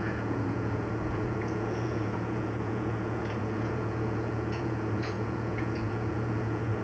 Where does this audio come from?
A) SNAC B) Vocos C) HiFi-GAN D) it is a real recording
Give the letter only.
B